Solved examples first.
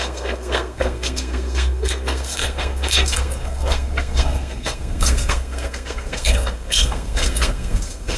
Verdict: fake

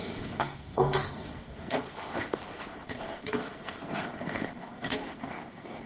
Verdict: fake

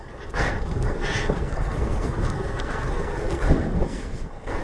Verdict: fake